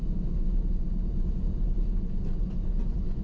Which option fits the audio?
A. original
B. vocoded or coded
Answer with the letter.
A